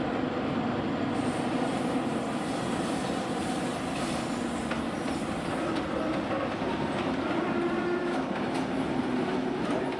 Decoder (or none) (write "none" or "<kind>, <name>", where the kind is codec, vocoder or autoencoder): none